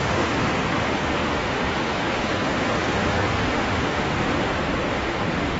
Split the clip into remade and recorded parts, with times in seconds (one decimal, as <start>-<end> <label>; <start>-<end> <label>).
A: 0.0-4.1 remade; 4.1-4.9 recorded; 4.9-5.6 remade